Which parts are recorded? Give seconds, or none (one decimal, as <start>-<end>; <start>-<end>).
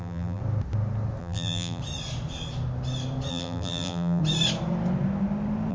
0.4-1.2; 1.8-3.3; 4.2-5.7